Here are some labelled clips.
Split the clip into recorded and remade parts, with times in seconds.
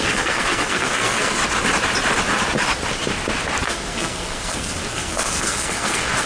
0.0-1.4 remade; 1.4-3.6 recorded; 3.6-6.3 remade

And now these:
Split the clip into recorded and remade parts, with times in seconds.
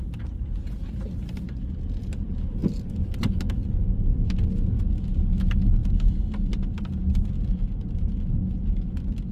0.0-9.3 recorded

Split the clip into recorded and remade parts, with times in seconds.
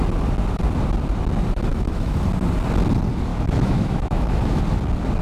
0.0-1.7 recorded; 1.7-2.2 remade; 2.2-3.3 recorded; 3.3-4.6 remade; 4.6-5.2 recorded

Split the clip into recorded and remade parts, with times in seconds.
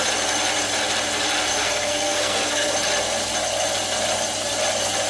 0.0-1.6 recorded; 1.6-2.7 remade; 2.7-5.1 recorded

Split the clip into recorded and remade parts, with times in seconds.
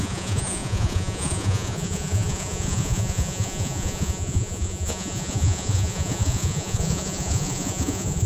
0.0-8.3 remade